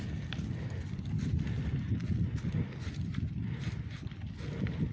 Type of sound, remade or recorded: recorded